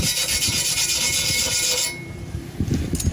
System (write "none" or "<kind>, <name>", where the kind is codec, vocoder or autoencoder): none